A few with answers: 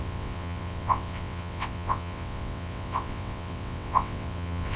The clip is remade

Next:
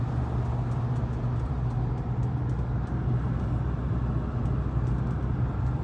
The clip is recorded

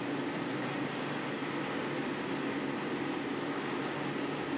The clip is recorded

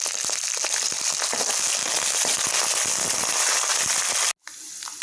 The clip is recorded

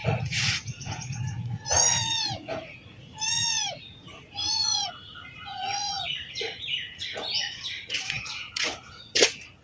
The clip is remade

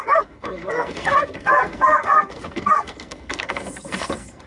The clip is remade